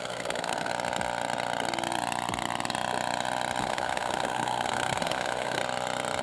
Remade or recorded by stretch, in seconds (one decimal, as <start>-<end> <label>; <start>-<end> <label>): 0.0-0.7 remade; 0.7-3.6 recorded; 3.6-5.6 remade; 5.6-6.2 recorded